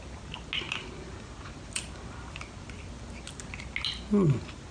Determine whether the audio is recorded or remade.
recorded